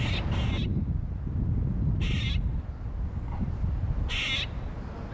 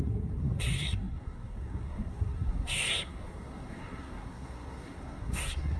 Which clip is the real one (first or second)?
first